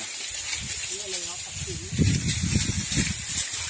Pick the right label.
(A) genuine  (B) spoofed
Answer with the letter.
A